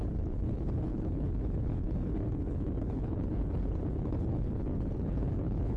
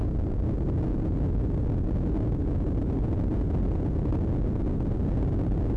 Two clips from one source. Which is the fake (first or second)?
first